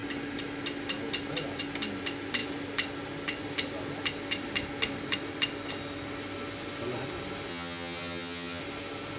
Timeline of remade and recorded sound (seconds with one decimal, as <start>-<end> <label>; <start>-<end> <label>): 0.0-7.5 recorded; 7.5-8.6 remade; 8.6-9.2 recorded